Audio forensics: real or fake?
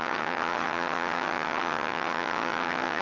fake